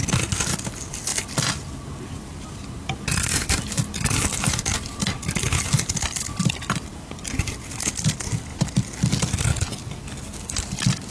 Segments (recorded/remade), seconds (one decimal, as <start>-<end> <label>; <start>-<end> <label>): 0.0-11.1 recorded